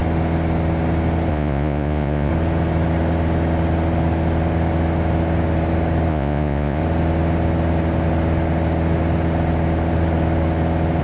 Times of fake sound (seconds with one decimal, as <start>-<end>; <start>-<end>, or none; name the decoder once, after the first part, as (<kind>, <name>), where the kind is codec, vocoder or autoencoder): 1.3-2.3 (vocoder, Vocos); 6.1-6.8